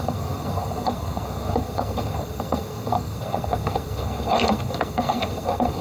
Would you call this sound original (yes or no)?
no